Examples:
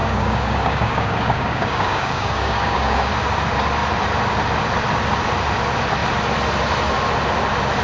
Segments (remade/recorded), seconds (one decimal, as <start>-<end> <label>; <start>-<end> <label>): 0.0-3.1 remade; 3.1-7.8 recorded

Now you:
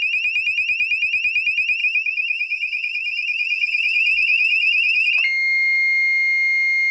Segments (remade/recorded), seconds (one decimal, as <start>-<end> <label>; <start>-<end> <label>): 0.0-1.8 recorded; 1.8-5.1 remade; 5.1-6.9 recorded

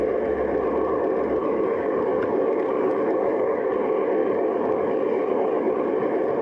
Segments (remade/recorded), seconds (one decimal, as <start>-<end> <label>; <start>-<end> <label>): 0.0-1.4 recorded; 1.4-3.7 remade; 3.7-4.2 recorded; 4.2-5.7 remade; 5.7-6.4 recorded